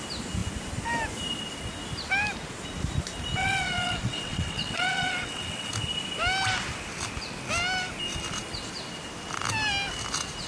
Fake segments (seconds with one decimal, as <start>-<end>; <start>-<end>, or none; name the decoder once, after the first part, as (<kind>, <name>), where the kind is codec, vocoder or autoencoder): 3.4-5.7 (vocoder, WaveNeXt)